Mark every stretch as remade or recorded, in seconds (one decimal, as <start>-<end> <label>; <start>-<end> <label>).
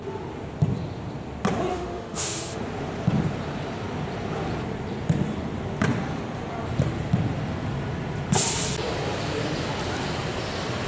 0.0-1.7 recorded; 1.7-2.6 remade; 2.6-10.9 recorded